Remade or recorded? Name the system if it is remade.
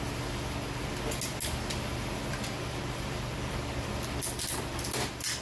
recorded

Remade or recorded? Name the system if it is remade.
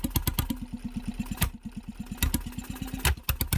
recorded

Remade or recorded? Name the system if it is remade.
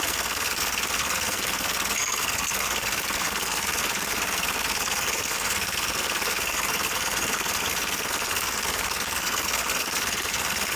remade, codec, SNAC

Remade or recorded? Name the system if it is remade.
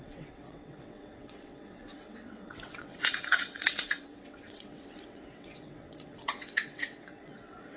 remade, vocoder, WaveNeXt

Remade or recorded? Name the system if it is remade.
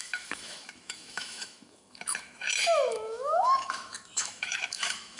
remade, autoencoder, DAC-VAE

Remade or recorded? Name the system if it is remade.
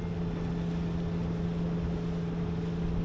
recorded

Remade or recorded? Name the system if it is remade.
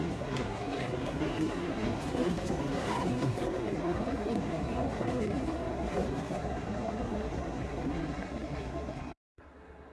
remade, codec, SNAC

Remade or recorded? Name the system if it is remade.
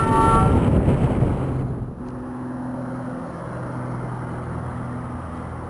recorded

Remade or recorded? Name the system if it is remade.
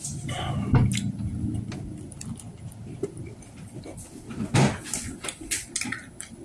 recorded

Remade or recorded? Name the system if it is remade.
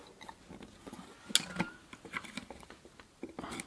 recorded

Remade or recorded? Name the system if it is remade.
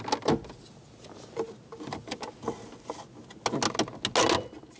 recorded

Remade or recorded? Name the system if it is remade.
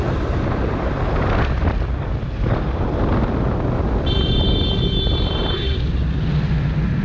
recorded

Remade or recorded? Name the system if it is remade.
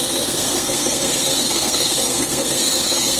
remade, codec, SNAC